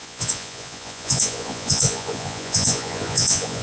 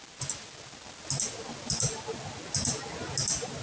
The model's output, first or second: first